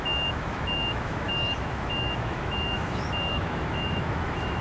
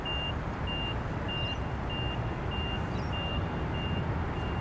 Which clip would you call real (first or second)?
second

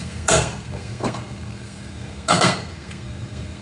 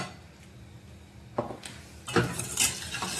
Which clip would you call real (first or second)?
second